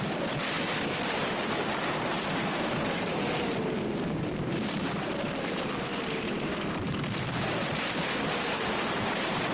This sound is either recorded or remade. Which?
remade